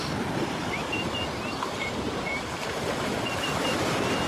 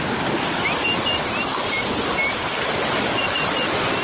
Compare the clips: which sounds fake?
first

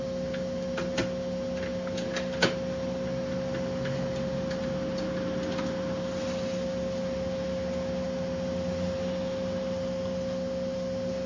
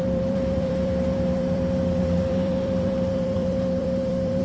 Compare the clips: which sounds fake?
second